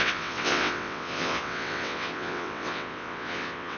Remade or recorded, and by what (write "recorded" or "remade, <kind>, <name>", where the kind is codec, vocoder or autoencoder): remade, vocoder, WaveNeXt